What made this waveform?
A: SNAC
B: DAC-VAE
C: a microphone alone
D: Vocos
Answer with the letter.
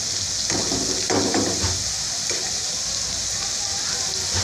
C